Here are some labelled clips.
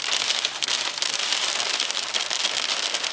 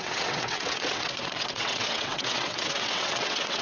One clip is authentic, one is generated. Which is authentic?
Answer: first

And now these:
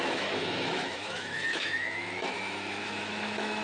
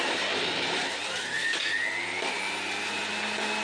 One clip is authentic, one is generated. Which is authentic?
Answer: second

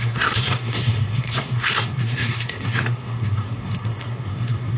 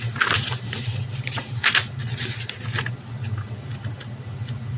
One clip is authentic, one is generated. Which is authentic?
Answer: second